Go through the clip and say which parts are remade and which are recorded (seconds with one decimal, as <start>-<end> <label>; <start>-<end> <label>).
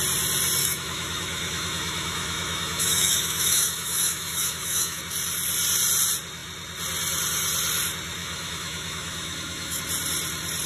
0.0-0.6 recorded; 0.6-5.0 remade; 5.0-8.2 recorded; 8.2-9.8 remade; 9.8-10.7 recorded